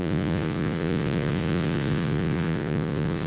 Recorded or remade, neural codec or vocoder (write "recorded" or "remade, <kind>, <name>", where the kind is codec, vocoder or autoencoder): remade, vocoder, Vocos